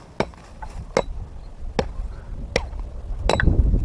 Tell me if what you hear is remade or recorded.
recorded